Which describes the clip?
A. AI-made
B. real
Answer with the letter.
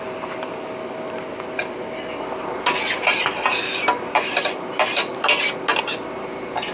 B